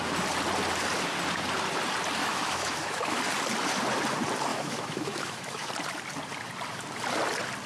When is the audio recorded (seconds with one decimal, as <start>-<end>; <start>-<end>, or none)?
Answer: 0.0-2.2; 3.2-4.5; 5.7-7.7